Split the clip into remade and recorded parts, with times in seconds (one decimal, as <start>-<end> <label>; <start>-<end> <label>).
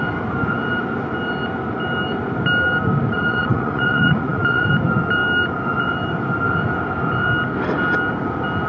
0.0-3.1 recorded; 3.1-4.7 remade; 4.7-8.7 recorded